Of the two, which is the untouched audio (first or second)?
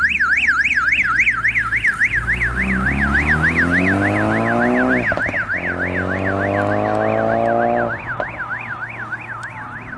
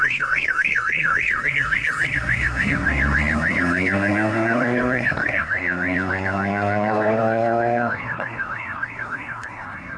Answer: first